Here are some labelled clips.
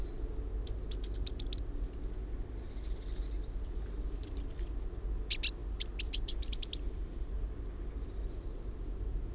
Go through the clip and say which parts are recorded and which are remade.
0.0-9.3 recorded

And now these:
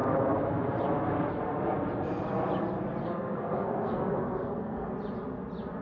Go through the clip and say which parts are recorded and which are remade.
0.0-3.0 recorded; 3.0-4.9 remade; 4.9-5.8 recorded

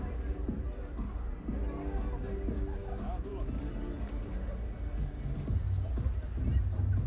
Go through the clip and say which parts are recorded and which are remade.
0.0-2.8 recorded; 2.8-3.5 remade; 3.5-7.1 recorded

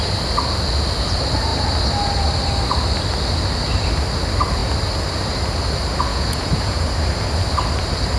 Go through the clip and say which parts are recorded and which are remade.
0.0-6.1 recorded; 6.1-6.9 remade; 6.9-8.2 recorded

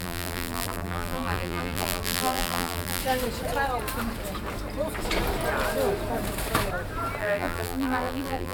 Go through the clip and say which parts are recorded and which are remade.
0.0-3.0 remade; 3.0-7.2 recorded; 7.2-8.5 remade

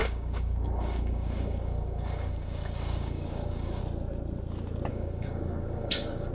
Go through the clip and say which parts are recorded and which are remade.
0.0-3.8 remade; 3.8-4.9 recorded; 4.9-6.3 remade